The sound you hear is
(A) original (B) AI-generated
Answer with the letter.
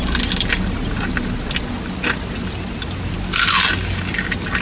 A